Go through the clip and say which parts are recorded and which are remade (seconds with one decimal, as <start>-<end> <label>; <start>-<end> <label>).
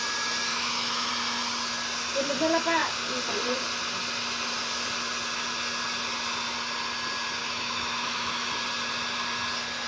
0.0-0.5 recorded; 0.5-1.1 remade; 1.1-7.4 recorded; 7.4-8.5 remade; 8.5-9.9 recorded